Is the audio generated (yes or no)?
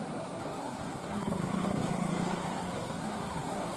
yes